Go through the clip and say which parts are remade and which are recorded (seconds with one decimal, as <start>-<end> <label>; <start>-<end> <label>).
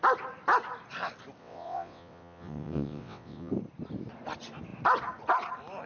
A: 0.0-1.4 recorded; 1.4-3.5 remade; 3.5-5.9 recorded